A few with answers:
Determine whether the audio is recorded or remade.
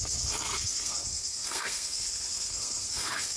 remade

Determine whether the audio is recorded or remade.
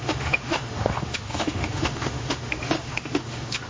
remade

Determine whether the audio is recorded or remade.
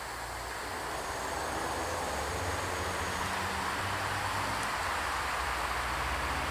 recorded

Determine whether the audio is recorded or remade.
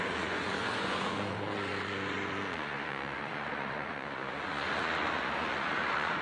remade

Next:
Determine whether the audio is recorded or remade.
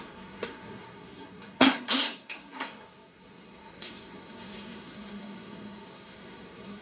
remade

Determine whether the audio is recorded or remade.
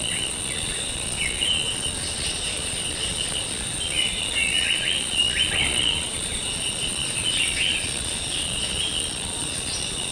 remade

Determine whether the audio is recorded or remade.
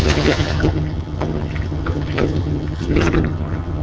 remade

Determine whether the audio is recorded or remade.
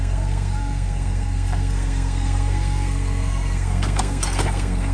remade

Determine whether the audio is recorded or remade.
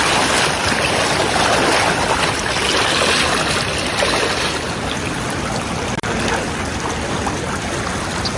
recorded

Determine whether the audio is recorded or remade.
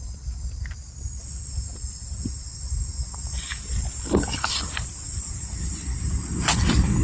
recorded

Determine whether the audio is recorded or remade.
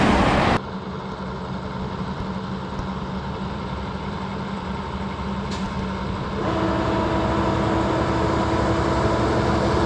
recorded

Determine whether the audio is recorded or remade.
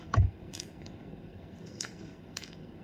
remade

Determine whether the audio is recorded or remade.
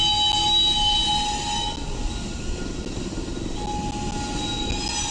recorded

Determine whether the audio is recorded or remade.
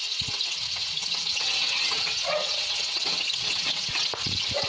remade